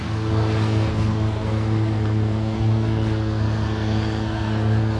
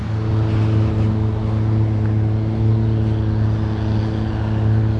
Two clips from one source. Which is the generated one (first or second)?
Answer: first